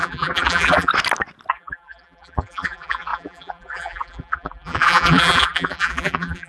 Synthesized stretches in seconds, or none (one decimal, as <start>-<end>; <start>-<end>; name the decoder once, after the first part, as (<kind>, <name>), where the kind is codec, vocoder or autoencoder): 0.0-0.9 (vocoder, BigVGAN v2); 1.5-6.5